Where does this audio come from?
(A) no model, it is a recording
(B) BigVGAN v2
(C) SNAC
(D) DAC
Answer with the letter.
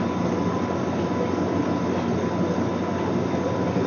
A